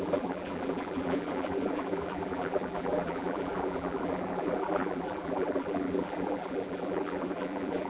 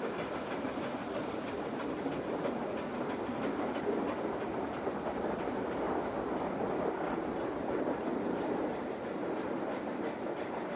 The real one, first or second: second